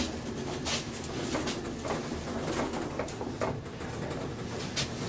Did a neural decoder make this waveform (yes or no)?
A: no